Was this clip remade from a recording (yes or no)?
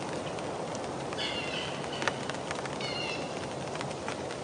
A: no